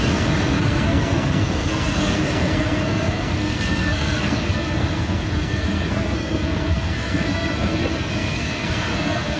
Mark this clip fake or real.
fake